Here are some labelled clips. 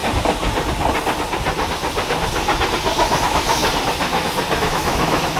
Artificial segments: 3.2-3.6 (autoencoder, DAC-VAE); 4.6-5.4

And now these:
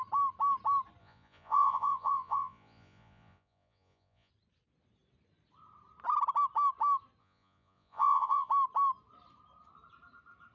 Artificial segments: 1.0-4.3 (vocoder, Vocos); 7.2-8.5

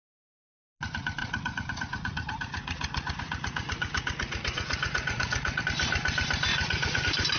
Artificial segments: 1.2-5.6 (vocoder, Vocos); 6.5-7.0

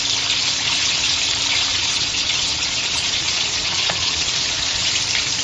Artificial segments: 0.4-1.2 (vocoder, Vocos); 1.7-4.9

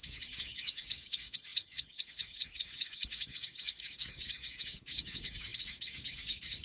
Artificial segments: 0.0-6.6 (codec, DAC)